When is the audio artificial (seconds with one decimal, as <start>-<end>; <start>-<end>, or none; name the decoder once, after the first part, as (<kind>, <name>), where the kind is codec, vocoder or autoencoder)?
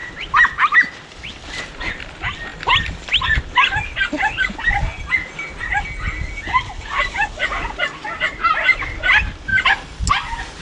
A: 2.5-3.4 (vocoder, BigVGAN v2); 9.5-10.0